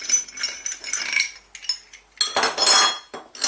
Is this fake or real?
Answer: real